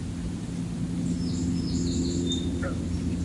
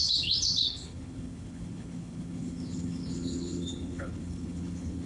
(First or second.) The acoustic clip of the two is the first